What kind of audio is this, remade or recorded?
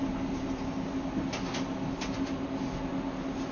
recorded